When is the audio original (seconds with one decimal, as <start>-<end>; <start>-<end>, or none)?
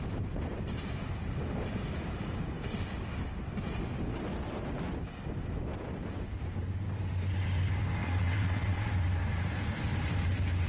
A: 0.0-8.0; 8.9-10.7